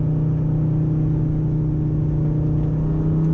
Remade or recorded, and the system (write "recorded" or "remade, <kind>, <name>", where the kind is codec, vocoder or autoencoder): recorded